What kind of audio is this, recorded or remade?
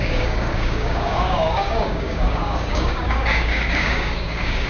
remade